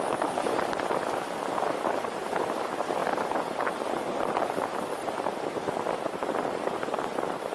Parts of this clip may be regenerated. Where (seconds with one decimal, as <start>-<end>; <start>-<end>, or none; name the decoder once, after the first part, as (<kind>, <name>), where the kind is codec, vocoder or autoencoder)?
none